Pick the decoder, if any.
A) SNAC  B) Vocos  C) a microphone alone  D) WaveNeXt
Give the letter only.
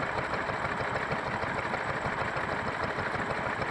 C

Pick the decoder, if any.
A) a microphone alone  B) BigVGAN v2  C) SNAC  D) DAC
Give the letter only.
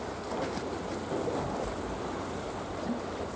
A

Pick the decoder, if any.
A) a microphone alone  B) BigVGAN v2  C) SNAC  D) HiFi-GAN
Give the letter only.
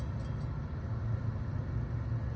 A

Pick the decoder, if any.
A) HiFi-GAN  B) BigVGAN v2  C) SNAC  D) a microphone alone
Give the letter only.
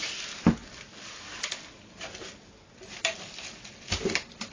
D